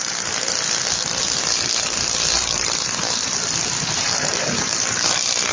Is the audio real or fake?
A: fake